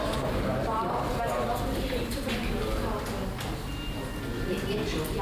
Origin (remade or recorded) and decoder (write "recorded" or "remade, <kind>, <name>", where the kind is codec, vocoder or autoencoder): recorded